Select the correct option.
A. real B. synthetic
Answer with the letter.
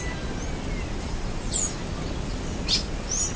A